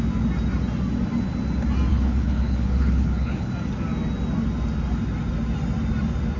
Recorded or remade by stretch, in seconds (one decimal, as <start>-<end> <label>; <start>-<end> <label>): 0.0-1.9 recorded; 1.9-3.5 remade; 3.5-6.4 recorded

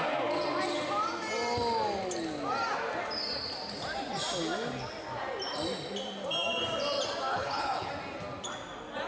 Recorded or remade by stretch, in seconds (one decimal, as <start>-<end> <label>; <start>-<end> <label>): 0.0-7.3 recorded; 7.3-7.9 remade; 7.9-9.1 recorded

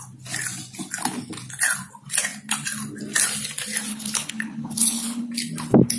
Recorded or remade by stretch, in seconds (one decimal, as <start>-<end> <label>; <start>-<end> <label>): 0.0-3.9 recorded; 3.9-5.3 remade; 5.3-6.0 recorded

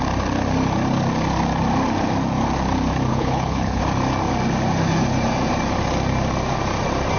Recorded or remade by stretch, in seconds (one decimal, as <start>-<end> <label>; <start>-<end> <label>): 0.0-3.1 recorded; 3.1-3.8 remade; 3.8-7.2 recorded